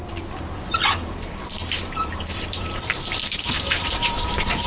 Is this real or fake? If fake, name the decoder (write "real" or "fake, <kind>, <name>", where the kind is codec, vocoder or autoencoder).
fake, vocoder, BigVGAN v2